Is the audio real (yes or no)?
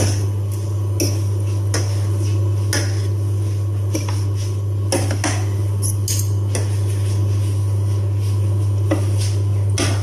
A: yes